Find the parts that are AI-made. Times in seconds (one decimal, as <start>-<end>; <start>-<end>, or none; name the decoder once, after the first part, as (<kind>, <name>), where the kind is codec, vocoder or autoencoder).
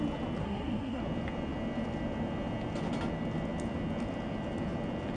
0.4-1.0 (codec, SNAC)